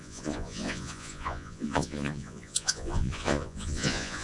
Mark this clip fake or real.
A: fake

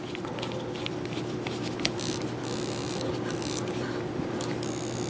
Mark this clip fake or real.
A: real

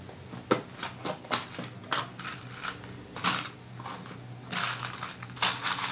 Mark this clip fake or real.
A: real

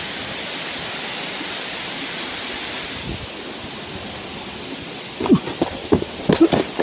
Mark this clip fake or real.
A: real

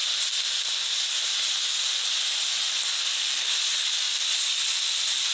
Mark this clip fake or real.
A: real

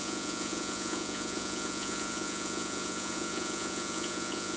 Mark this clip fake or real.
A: fake